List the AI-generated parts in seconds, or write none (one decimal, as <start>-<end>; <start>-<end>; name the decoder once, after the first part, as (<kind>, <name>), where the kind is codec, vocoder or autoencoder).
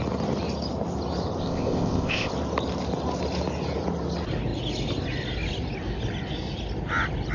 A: 1.4-2.3 (codec, ZipCodec)